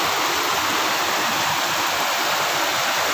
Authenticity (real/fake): real